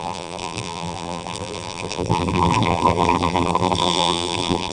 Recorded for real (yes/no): no